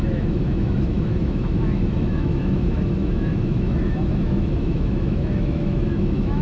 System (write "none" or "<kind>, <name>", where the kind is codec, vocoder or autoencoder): autoencoder, DAC-VAE